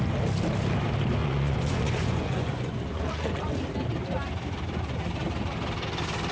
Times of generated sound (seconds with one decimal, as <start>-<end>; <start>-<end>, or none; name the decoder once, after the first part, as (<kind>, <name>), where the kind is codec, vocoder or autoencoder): 1.2-3.5 (vocoder, Vocos)

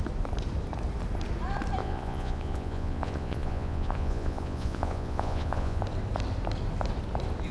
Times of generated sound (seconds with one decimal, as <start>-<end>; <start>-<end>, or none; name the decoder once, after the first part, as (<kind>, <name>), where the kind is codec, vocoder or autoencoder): 1.8-5.8 (vocoder, Vocos)

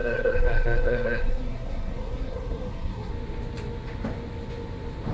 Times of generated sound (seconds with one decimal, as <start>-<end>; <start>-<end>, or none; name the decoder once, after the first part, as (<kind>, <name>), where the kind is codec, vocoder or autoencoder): 0.0-3.1 (codec, SNAC)

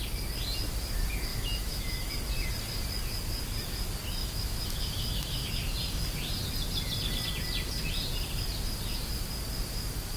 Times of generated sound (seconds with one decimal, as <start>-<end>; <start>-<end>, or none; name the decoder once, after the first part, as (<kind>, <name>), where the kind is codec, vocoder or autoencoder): 1.3-2.1 (autoencoder, DAC-VAE); 4.2-5.5

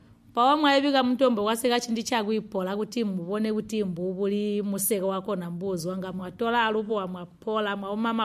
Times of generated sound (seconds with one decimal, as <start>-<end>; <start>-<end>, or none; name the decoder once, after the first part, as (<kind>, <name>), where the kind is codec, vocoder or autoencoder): none

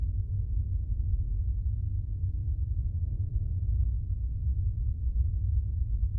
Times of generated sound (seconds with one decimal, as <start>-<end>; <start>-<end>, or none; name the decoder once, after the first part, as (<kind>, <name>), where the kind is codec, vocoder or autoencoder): 0.6-1.3 (vocoder, BigVGAN v2); 2.4-3.5

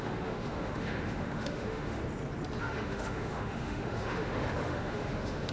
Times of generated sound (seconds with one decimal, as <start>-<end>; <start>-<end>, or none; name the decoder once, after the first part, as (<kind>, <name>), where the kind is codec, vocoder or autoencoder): 0.0-2.0 (autoencoder, DAC-VAE); 2.6-5.5

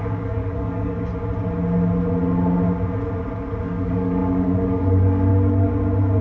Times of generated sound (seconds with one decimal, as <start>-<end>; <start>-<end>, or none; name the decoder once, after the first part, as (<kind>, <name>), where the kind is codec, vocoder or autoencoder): 0.0-1.1 (codec, DAC); 3.6-5.3